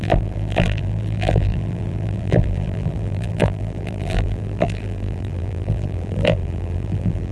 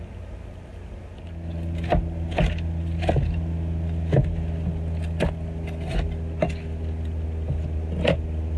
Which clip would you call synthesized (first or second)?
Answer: first